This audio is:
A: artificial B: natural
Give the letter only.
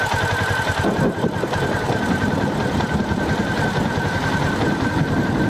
B